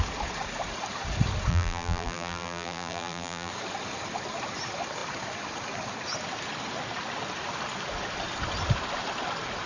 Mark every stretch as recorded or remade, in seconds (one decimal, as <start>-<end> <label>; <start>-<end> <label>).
0.0-1.5 recorded; 1.5-3.5 remade; 3.5-9.7 recorded